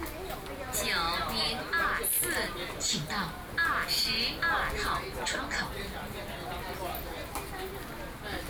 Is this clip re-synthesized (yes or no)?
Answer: no